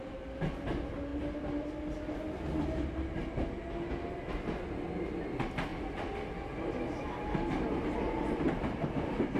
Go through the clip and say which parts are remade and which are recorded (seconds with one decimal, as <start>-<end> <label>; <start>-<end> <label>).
0.0-1.1 recorded; 1.1-1.7 remade; 1.7-9.4 recorded